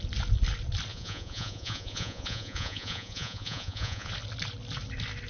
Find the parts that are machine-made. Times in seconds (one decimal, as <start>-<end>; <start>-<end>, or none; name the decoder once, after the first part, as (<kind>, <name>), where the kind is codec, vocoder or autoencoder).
0.9-4.1 (vocoder, Vocos)